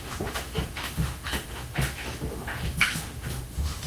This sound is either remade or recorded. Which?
remade